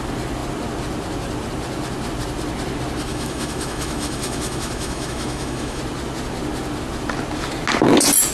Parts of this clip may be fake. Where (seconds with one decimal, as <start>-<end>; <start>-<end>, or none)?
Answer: 3.1-5.8